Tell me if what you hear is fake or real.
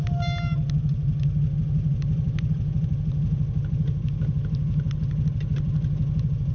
real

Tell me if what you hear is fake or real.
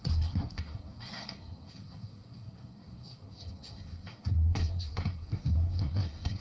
fake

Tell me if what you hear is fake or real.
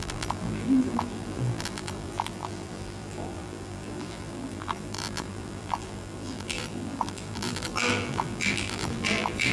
fake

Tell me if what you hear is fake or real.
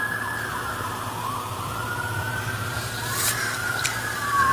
fake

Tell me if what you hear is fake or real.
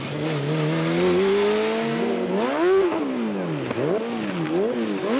real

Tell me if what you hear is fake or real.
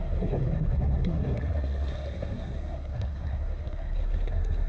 fake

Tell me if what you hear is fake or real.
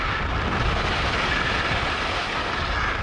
real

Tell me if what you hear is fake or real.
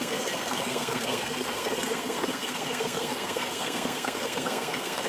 fake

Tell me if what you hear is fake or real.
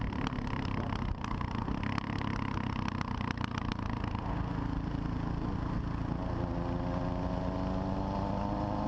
real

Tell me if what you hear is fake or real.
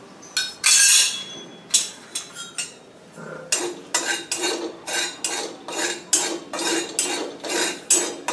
real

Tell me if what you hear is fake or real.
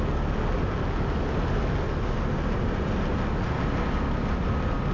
real